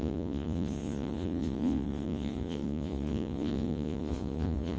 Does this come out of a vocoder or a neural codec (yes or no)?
yes